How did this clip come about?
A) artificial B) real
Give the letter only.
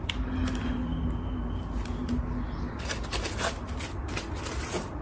B